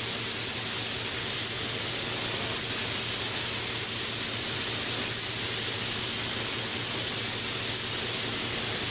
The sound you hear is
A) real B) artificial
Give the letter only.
A